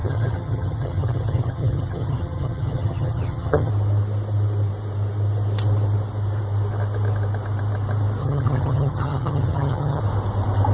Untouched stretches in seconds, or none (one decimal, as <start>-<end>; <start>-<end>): 3.7-8.2; 10.0-10.7